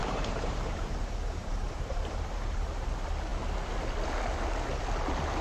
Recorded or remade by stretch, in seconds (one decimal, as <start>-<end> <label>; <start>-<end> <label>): 0.0-0.9 remade; 0.9-1.4 recorded; 1.4-2.7 remade; 2.7-5.4 recorded